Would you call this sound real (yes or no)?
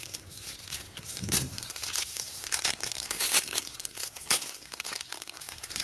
no